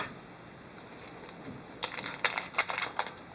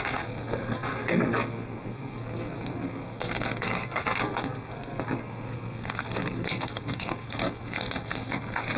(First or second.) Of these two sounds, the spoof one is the second